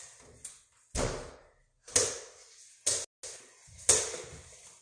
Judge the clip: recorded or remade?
recorded